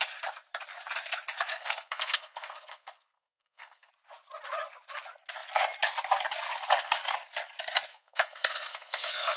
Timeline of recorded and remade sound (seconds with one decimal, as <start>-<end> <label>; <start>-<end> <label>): 0.0-1.5 recorded; 1.5-3.9 remade; 3.9-7.9 recorded; 7.9-9.4 remade